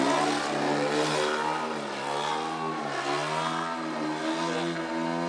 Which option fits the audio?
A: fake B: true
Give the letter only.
B